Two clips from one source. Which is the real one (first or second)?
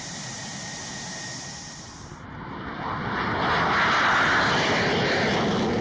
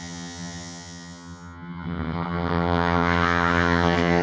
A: first